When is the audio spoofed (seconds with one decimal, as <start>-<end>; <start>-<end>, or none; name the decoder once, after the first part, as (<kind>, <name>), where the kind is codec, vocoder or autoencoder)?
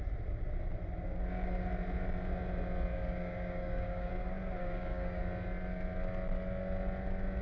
2.9-4.1 (codec, DAC); 4.6-5.2